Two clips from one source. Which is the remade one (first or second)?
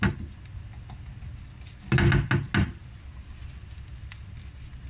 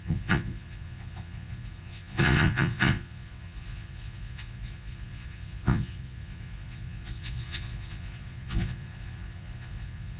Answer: second